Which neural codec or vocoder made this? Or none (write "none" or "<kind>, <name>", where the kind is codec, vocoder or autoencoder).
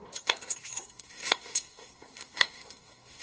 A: codec, SNAC